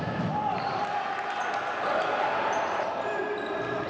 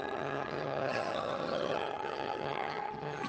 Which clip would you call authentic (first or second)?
first